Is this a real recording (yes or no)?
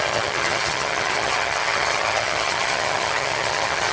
no